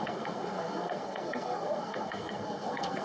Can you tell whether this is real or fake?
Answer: fake